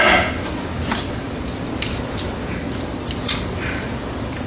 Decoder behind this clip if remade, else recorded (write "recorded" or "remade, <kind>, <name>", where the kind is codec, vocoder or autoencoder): recorded